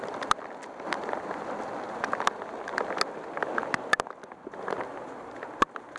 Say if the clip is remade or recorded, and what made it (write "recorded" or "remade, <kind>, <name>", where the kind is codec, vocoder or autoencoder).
recorded